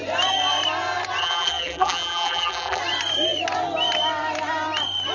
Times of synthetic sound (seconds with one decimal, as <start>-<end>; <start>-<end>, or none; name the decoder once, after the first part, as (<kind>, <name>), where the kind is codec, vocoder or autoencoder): 1.2-2.8 (vocoder, BigVGAN v2)